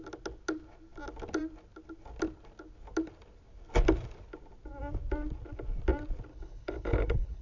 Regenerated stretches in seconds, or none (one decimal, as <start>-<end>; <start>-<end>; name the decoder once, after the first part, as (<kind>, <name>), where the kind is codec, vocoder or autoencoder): 6.3-7.4 (codec, HILCodec)